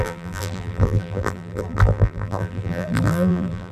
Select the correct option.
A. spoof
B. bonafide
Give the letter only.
A